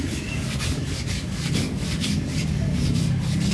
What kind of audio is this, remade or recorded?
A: remade